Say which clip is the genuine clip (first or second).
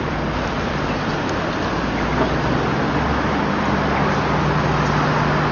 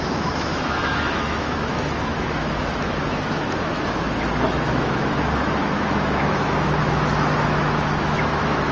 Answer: first